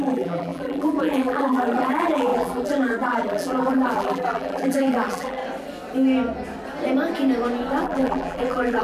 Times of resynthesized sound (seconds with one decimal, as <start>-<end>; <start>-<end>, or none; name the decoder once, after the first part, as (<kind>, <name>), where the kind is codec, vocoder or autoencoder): 0.0-5.4 (vocoder, BigVGAN v2); 7.8-8.8